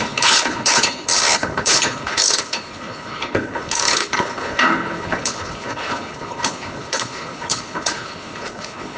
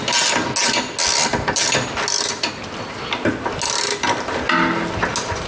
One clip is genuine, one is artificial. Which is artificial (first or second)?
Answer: first